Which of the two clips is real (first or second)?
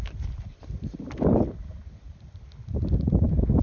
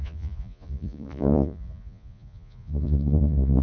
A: first